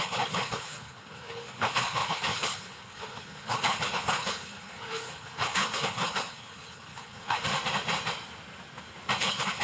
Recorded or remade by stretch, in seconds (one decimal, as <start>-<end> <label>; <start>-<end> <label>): 0.0-7.5 remade; 7.5-9.2 recorded; 9.2-9.6 remade